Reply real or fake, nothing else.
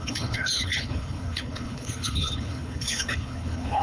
fake